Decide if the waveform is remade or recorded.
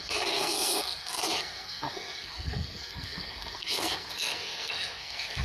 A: remade